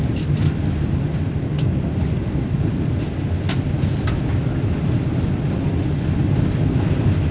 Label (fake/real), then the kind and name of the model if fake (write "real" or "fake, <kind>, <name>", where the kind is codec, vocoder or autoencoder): real